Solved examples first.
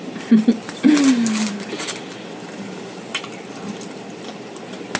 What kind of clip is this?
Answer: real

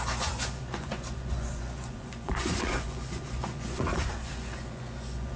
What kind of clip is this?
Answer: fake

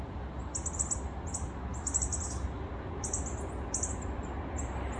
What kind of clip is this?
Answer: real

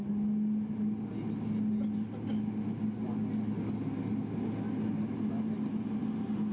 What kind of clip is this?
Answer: real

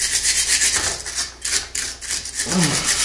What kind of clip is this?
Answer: real